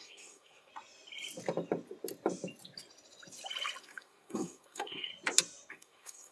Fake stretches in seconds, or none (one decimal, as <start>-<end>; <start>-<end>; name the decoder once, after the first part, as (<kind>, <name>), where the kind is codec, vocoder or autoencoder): 0.0-0.7 (codec, SNAC); 3.8-5.1; 5.7-6.3